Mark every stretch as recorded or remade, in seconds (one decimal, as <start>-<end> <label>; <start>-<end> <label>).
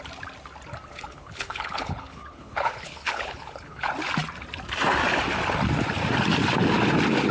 0.0-0.9 recorded; 0.9-3.9 remade; 3.9-7.3 recorded